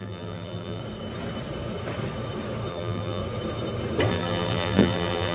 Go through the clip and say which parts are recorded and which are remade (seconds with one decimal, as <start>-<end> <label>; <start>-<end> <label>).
0.0-0.8 remade; 0.8-2.7 recorded; 2.7-3.2 remade; 3.2-4.1 recorded; 4.1-5.3 remade